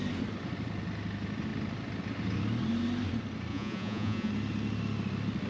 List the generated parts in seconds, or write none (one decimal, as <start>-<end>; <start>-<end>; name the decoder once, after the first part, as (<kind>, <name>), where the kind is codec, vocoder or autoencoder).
3.5-4.3 (vocoder, Vocos)